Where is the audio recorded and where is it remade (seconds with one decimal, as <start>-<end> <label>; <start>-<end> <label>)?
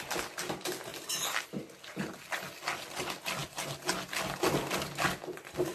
0.0-5.7 recorded